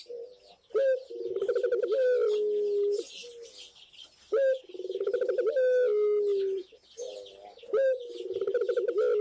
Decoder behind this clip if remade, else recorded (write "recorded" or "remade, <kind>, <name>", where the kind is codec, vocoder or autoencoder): recorded